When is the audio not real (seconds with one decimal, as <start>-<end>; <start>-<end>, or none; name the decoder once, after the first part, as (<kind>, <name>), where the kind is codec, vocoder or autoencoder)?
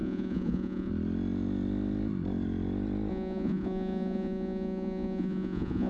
0.0-0.9 (vocoder, Vocos); 3.1-5.9